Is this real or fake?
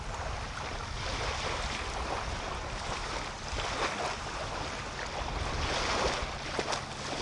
real